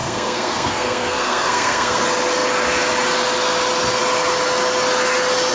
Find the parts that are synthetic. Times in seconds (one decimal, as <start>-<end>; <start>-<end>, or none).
0.0-2.0